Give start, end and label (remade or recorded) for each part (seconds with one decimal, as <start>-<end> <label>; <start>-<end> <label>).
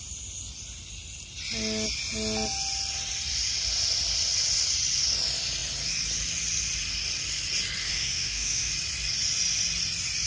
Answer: 0.0-7.8 recorded; 7.8-8.7 remade; 8.7-10.3 recorded